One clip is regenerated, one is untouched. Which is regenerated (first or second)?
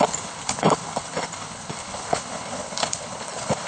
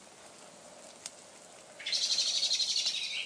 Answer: first